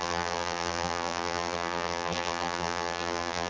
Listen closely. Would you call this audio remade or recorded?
remade